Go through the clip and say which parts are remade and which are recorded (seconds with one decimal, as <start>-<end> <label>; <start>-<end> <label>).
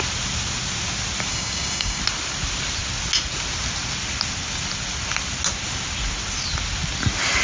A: 0.0-1.3 recorded; 1.3-2.0 remade; 2.0-7.4 recorded